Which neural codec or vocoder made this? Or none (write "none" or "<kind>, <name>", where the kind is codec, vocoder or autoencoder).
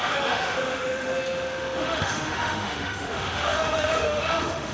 autoencoder, DAC-VAE